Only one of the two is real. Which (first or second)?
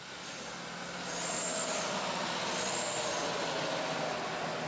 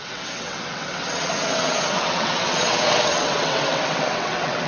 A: first